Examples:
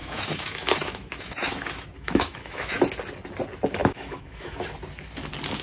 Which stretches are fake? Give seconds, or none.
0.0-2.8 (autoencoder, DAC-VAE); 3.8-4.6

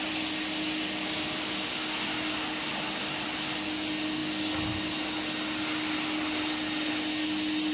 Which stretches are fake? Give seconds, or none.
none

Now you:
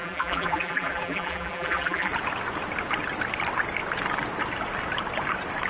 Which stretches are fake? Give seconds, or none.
0.0-2.1 (vocoder, BigVGAN v2)

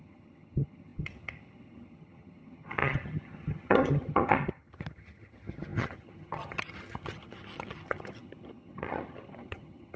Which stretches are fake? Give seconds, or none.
0.0-10.0 (vocoder, HiFi-GAN)

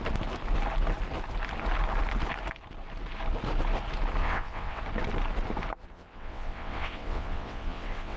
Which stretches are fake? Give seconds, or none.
4.2-4.8 (vocoder, WaveNeXt); 5.9-8.2

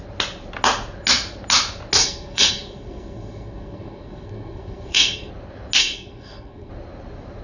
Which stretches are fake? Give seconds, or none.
2.0-5.3 (codec, SNAC); 5.8-6.7

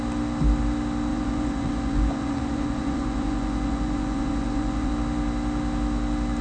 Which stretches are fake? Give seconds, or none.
1.1-4.9 (vocoder, Vocos)

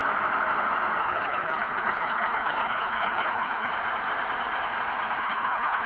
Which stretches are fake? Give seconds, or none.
1.0-3.7 (codec, HILCodec); 5.2-5.9